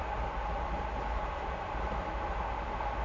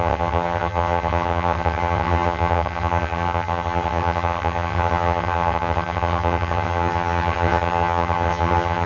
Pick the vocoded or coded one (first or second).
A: second